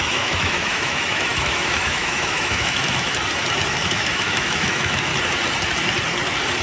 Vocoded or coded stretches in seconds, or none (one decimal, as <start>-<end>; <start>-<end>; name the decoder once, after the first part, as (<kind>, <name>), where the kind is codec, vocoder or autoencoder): 0.0-3.2 (autoencoder, DAC-VAE); 3.8-5.1